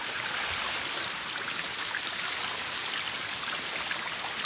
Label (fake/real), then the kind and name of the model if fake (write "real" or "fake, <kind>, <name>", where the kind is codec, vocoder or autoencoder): real